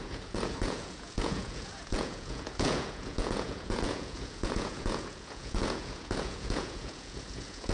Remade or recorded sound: remade